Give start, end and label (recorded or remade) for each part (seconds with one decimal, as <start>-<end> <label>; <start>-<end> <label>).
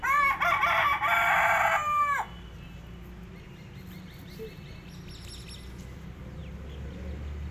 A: 0.0-7.5 recorded